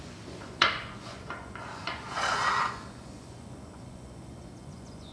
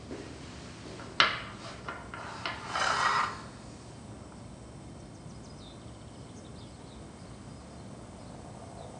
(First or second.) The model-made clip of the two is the first